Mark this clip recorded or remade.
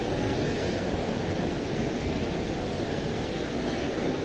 remade